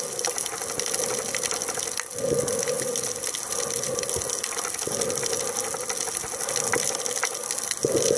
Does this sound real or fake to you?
real